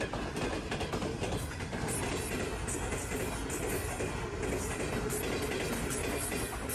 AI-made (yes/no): no